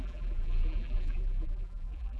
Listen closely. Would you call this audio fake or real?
fake